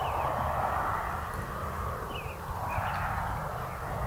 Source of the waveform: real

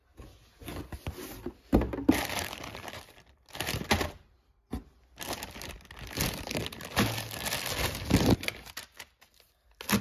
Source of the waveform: real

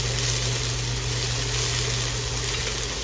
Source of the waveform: real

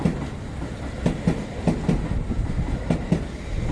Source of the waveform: real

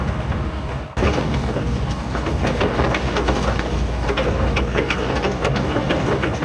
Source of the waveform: fake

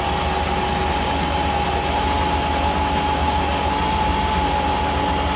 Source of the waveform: real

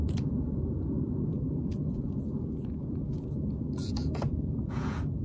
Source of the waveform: fake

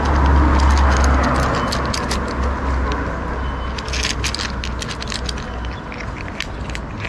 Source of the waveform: real